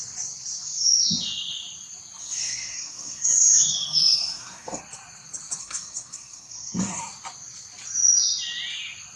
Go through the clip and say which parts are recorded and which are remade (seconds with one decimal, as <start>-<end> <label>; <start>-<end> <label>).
0.0-2.2 recorded; 2.2-4.8 remade; 4.8-5.6 recorded; 5.6-7.0 remade; 7.0-9.2 recorded